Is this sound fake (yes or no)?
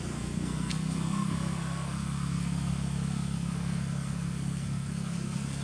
yes